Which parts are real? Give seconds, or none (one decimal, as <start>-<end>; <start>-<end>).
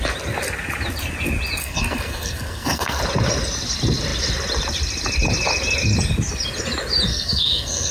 0.0-1.6; 3.0-7.1